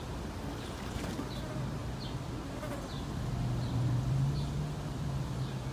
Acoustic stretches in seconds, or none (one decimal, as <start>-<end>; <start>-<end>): 0.0-1.8; 2.3-5.7